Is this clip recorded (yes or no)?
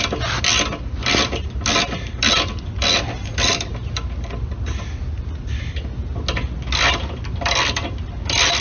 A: yes